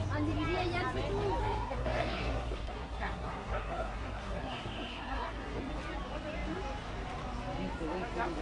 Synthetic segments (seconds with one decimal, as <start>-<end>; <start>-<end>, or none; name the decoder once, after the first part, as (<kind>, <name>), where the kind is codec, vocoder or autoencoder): 1.4-5.6 (codec, SNAC)